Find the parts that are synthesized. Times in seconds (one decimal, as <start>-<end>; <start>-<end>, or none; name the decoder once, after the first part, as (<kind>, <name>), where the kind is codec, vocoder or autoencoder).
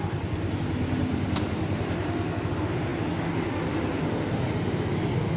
none